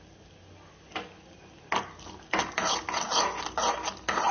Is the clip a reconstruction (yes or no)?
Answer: no